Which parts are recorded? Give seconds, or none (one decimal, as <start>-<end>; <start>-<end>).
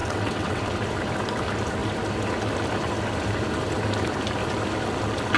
0.6-5.4